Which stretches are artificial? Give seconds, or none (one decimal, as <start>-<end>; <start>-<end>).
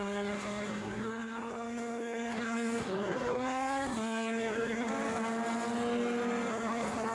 0.0-4.9; 6.5-7.1